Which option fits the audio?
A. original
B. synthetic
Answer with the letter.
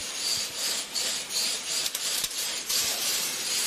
B